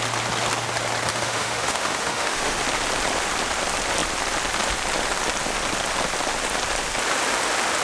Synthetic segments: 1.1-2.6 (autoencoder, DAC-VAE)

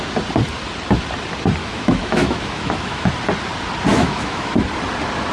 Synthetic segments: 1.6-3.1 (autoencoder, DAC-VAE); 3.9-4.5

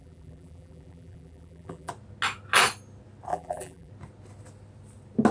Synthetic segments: 0.0-1.9 (vocoder, BigVGAN v2); 3.3-3.9

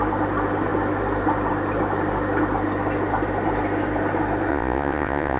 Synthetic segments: 4.5-5.4 (vocoder, Vocos)

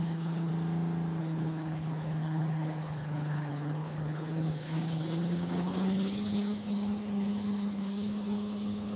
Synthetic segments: 0.0-0.5 (codec, HILCodec); 1.2-9.0

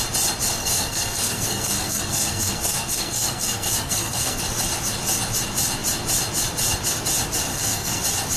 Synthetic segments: 0.6-4.4 (codec, SNAC); 7.5-8.0